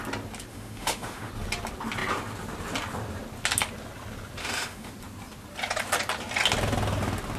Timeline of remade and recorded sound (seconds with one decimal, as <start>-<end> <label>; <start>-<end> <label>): 0.0-0.5 recorded; 0.5-1.3 remade; 1.3-4.4 recorded; 4.4-4.9 remade; 4.9-7.4 recorded